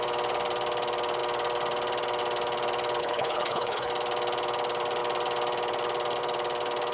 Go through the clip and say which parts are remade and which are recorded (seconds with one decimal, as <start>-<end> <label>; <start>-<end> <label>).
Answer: 0.0-3.0 recorded; 3.0-3.9 remade; 3.9-6.9 recorded